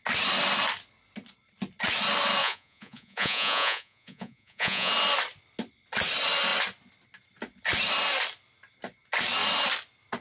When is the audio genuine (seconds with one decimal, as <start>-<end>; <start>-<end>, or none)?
0.0-2.4; 4.9-10.2